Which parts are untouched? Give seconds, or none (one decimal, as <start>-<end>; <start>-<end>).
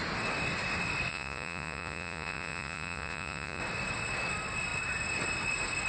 0.0-1.1; 3.6-5.9